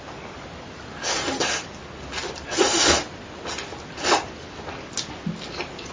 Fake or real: real